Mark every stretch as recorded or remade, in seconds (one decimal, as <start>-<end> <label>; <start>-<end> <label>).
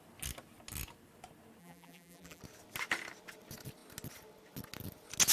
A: 0.0-1.6 recorded; 1.6-2.4 remade; 2.4-5.3 recorded